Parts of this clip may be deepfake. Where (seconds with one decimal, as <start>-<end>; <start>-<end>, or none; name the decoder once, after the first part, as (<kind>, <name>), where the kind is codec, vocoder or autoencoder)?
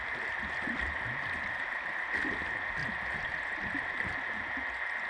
none